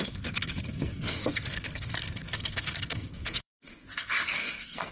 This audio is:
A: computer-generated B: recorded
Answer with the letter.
A